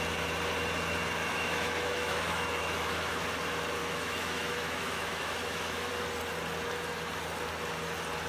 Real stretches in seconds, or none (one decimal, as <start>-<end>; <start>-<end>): 0.0-1.2; 3.2-3.8; 5.9-8.3